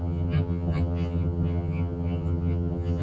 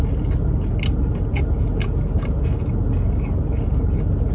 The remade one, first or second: first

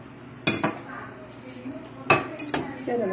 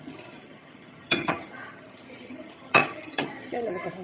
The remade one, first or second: second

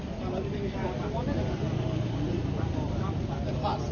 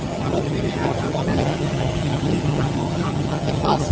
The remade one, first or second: second